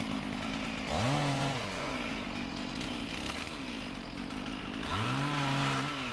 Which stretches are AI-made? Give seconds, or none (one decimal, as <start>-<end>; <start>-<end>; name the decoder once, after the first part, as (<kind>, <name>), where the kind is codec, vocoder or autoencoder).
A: 1.2-1.9 (vocoder, Vocos)